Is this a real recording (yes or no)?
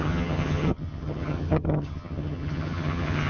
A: no